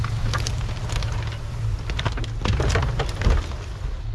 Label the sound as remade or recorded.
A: recorded